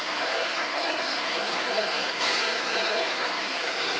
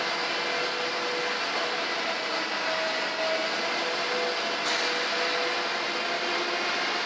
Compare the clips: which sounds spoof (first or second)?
first